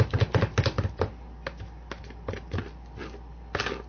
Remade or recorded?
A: recorded